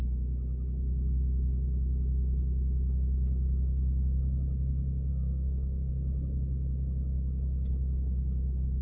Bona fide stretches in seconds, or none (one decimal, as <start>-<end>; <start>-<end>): 0.0-5.1; 5.9-8.8